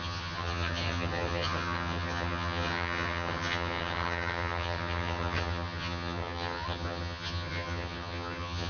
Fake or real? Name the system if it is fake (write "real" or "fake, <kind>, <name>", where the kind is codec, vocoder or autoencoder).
fake, vocoder, HiFi-GAN